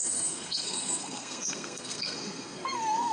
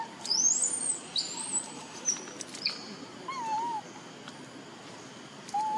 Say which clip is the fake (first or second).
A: first